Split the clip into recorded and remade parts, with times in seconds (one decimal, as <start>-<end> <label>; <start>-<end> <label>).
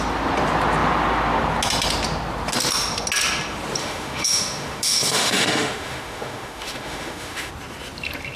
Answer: 0.0-3.8 recorded; 3.8-7.5 remade; 7.5-8.4 recorded